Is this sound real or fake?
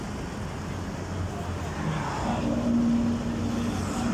real